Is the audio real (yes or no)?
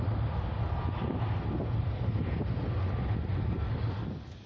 yes